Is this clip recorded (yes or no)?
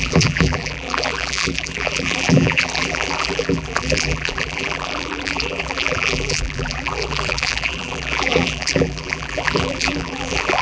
no